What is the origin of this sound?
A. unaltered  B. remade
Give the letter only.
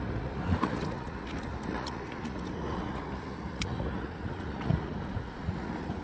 B